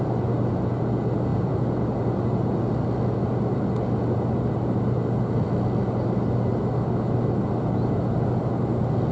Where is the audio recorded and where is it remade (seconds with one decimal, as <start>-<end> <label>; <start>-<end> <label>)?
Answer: 0.0-1.3 recorded; 1.3-2.0 remade; 2.0-9.1 recorded